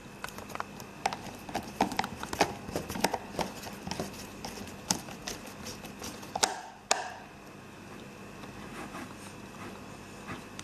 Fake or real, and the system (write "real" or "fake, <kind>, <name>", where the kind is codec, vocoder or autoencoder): real